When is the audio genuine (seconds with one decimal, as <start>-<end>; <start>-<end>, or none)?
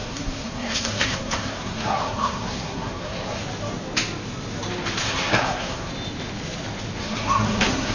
3.4-5.0; 5.9-7.0